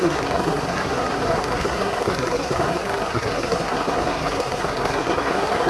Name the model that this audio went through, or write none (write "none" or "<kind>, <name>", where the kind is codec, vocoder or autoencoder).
codec, SNAC